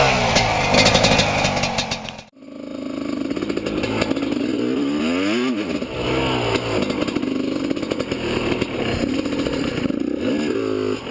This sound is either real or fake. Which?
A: real